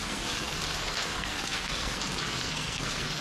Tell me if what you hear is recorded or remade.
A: remade